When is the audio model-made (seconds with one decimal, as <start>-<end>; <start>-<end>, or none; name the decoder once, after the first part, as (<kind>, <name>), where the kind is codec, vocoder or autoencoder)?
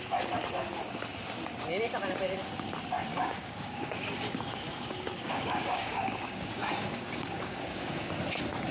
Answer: 3.1-8.1 (codec, DAC)